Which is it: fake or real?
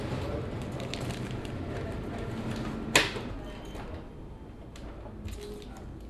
real